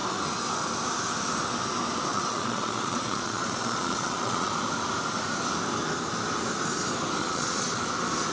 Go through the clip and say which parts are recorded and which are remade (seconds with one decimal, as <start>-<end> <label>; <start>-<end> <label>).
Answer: 0.0-2.1 recorded; 2.1-4.5 remade; 4.5-7.2 recorded; 7.2-7.8 remade; 7.8-8.3 recorded